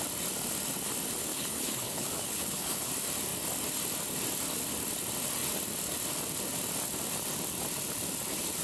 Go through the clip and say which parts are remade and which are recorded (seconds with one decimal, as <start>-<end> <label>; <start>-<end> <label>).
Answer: 0.0-1.3 recorded; 1.3-2.9 remade; 2.9-8.6 recorded